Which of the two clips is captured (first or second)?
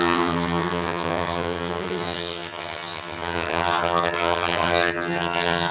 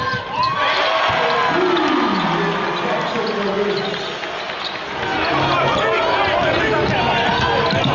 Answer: second